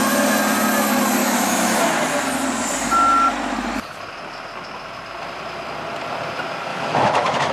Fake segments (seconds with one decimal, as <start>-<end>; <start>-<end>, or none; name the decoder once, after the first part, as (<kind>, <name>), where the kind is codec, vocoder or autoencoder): 1.2-1.8 (autoencoder, DAC-VAE); 6.7-7.5